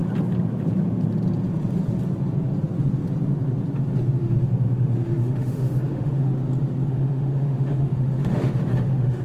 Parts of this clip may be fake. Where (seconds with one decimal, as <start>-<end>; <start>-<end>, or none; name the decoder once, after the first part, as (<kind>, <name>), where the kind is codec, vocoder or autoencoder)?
4.2-6.3 (autoencoder, DAC-VAE); 6.9-9.2